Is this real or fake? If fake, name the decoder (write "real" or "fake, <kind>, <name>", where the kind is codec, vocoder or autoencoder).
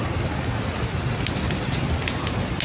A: real